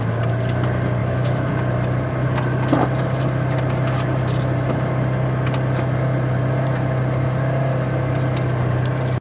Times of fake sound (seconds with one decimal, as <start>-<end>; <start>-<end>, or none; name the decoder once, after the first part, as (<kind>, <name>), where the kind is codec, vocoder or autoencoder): 1.0-1.5 (autoencoder, DAC-VAE)